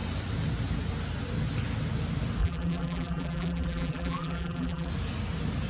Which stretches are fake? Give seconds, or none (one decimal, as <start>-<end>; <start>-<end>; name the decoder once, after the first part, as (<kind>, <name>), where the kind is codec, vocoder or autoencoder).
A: 2.4-4.9 (vocoder, BigVGAN v2)

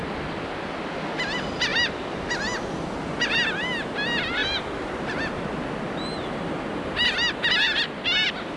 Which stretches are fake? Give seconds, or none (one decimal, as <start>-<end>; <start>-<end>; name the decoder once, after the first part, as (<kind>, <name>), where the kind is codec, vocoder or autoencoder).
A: 4.4-5.2 (vocoder, BigVGAN v2)